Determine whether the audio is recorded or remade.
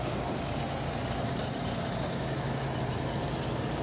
recorded